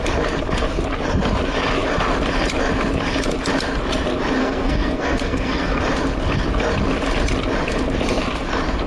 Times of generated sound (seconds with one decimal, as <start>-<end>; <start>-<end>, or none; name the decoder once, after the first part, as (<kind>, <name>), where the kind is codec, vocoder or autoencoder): 4.4-5.8 (codec, SNAC)